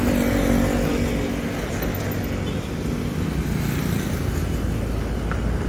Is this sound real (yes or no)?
yes